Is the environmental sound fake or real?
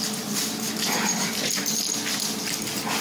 real